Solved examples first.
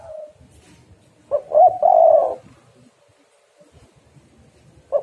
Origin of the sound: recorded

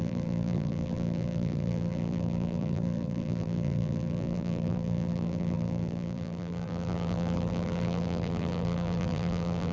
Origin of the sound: remade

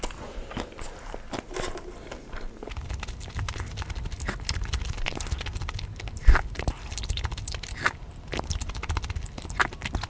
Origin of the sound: recorded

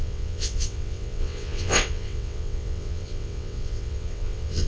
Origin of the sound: remade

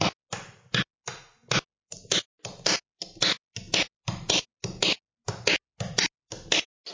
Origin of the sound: recorded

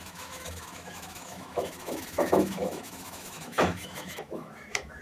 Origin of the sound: remade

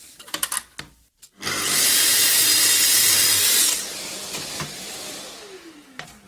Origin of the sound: recorded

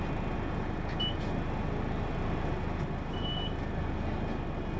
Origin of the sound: recorded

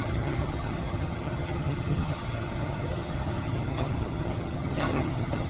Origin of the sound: remade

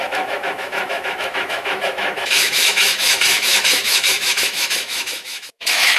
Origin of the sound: remade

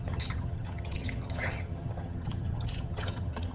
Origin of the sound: remade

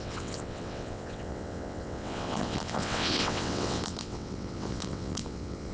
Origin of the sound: remade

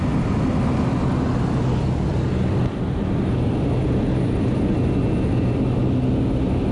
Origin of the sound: recorded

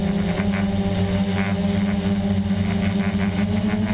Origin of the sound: recorded